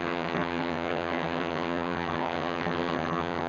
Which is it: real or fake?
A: fake